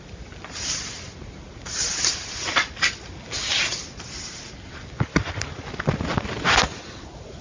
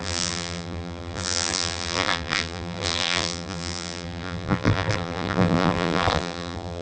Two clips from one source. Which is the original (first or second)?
first